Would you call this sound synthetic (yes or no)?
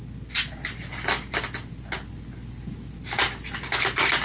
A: no